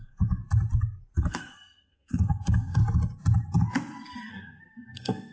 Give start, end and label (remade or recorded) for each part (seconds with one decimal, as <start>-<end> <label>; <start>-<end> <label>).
0.0-0.4 remade; 0.4-1.3 recorded; 1.3-2.8 remade; 2.8-4.3 recorded; 4.3-5.3 remade